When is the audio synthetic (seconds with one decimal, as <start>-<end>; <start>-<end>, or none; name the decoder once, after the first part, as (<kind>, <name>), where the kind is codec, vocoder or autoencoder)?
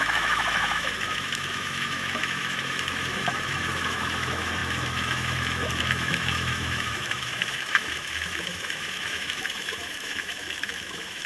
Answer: 0.0-11.3 (autoencoder, DAC-VAE)